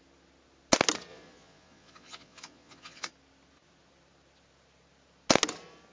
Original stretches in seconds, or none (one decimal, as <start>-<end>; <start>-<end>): 0.0-1.1; 3.1-5.9